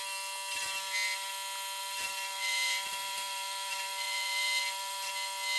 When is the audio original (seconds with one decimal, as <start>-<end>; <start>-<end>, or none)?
0.0-1.8; 5.1-5.6